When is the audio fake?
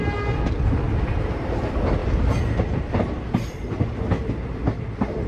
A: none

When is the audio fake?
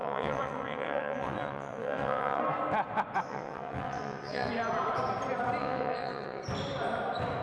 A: 0.0-2.4 (vocoder, WaveNeXt); 3.3-4.5; 5.6-6.4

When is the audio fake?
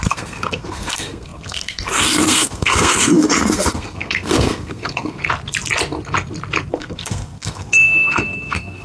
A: 0.0-5.2 (codec, SNAC); 6.7-8.8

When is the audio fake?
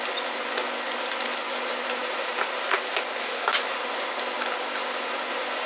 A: none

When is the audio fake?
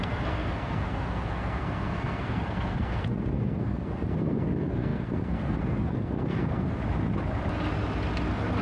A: 0.0-6.8 (codec, SNAC)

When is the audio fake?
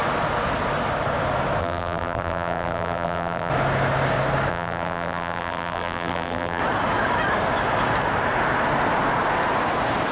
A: 1.6-3.5 (vocoder, BigVGAN v2); 4.5-6.6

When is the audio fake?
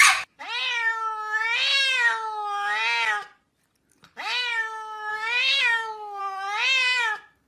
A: 5.1-6.2 (codec, DAC)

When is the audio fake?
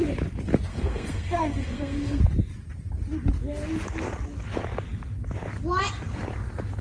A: 0.7-2.2 (codec, SNAC)